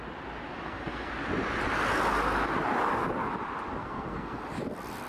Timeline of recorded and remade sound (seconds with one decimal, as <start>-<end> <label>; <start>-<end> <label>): 0.0-0.5 recorded; 0.5-1.1 remade; 1.1-3.8 recorded; 3.8-4.4 remade; 4.4-5.1 recorded